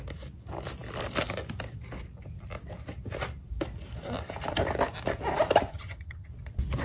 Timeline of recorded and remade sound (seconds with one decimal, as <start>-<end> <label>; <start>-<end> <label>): 0.0-5.7 recorded; 5.7-6.3 remade; 6.3-6.8 recorded